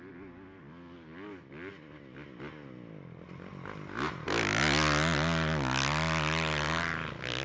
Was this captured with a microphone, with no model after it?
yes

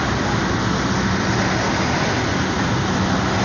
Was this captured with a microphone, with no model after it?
yes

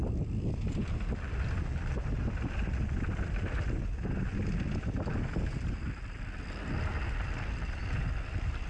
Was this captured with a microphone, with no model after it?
yes